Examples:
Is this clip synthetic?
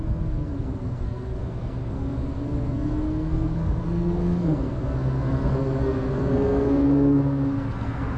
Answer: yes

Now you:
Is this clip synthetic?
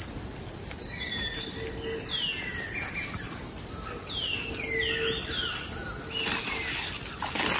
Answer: no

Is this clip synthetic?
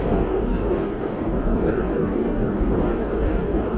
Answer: yes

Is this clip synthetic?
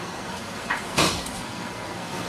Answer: yes